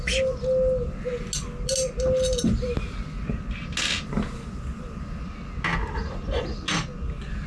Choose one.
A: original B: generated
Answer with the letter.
A